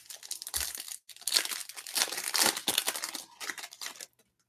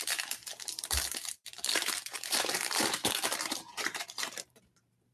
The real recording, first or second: first